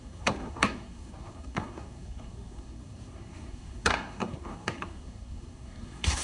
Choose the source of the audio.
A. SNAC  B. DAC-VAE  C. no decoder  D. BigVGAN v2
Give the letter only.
A